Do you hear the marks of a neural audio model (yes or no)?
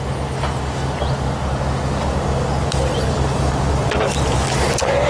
no